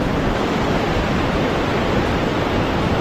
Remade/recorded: recorded